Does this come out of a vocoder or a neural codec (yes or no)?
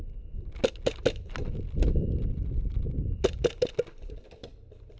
no